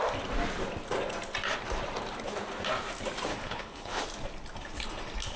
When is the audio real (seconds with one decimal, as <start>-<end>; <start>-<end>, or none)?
0.0-3.3; 4.0-5.4